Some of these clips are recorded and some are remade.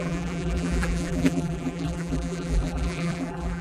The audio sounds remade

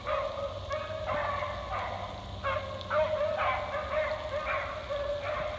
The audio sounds recorded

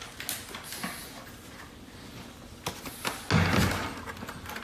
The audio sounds recorded